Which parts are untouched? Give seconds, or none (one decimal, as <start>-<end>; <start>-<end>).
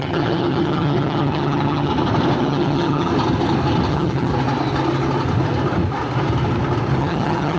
1.9-2.4; 3.1-3.9; 4.3-7.0